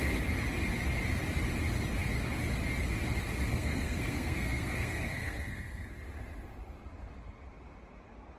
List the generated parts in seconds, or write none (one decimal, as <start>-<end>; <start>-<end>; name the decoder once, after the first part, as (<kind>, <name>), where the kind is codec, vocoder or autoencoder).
3.5-5.9 (codec, SNAC)